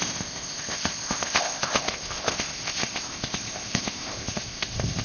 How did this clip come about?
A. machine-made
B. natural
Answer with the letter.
A